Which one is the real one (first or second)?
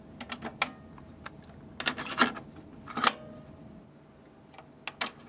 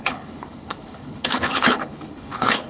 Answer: first